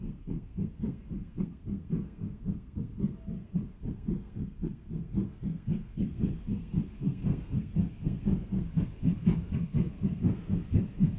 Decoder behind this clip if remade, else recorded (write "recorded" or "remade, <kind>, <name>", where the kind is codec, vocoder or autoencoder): remade, codec, SNAC